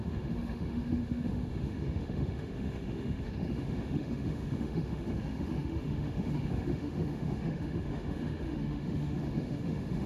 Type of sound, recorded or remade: remade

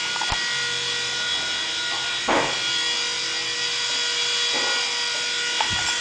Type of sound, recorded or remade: recorded